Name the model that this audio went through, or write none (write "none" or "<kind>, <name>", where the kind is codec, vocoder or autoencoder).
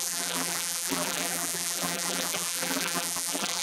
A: vocoder, BigVGAN v2